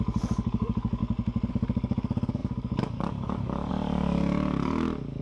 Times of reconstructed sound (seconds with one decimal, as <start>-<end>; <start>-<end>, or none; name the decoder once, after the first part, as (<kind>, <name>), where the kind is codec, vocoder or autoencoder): 0.0-1.0 (codec, DAC); 1.5-5.2